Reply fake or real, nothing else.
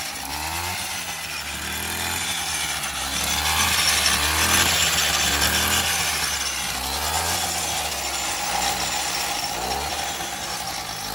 real